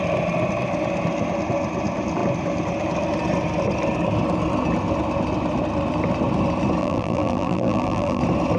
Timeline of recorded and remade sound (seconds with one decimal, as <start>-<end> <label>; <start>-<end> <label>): 0.0-6.8 recorded; 6.8-8.2 remade; 8.2-8.6 recorded